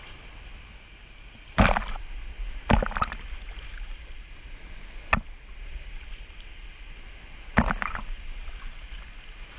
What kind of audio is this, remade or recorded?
recorded